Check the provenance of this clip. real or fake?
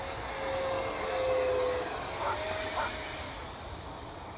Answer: real